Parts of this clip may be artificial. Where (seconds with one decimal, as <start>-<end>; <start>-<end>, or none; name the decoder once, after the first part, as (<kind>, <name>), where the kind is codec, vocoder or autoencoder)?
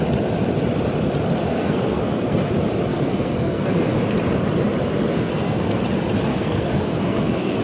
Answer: 1.4-2.5 (codec, SNAC); 2.9-4.0; 5.1-5.8; 6.3-7.6